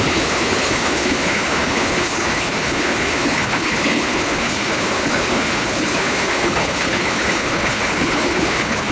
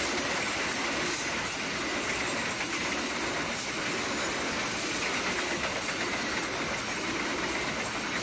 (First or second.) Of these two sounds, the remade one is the first